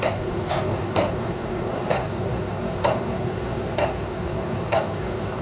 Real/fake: fake